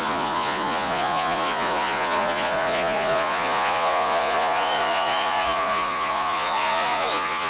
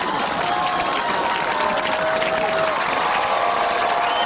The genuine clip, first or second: second